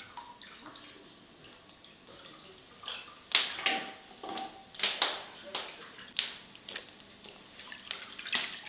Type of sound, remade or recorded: recorded